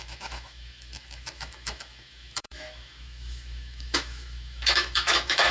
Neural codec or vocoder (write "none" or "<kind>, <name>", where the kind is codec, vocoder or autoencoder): autoencoder, DAC-VAE